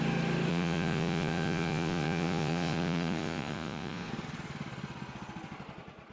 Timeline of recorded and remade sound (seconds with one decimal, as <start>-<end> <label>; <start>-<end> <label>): 0.0-0.5 recorded; 0.5-4.1 remade; 4.1-6.1 recorded